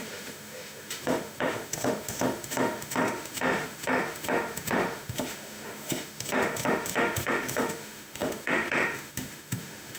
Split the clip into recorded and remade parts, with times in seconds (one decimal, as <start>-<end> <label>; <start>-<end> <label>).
0.0-10.0 remade

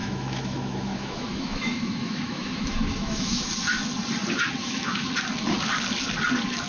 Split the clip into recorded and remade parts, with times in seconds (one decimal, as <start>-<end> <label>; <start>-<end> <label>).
0.0-3.5 remade; 3.5-4.6 recorded; 4.6-5.1 remade; 5.1-6.7 recorded

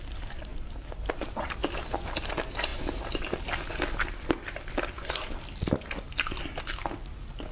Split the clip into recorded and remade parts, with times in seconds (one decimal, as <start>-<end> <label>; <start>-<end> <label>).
0.0-7.5 remade